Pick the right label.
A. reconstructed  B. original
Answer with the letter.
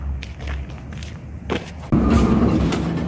B